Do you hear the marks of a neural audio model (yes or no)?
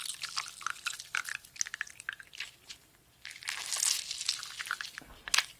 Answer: no